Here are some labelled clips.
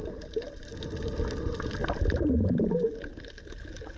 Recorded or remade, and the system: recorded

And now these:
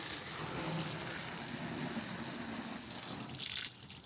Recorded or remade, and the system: recorded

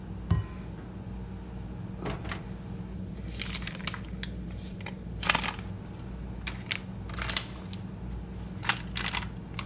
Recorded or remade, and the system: recorded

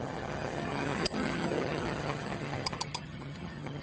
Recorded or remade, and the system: remade, vocoder, HiFi-GAN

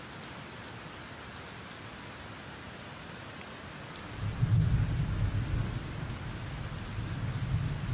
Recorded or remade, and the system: recorded